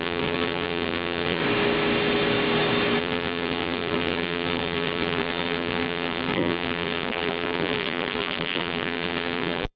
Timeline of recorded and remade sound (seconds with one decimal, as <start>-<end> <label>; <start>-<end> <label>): 0.0-1.4 remade; 1.4-3.0 recorded; 3.0-9.8 remade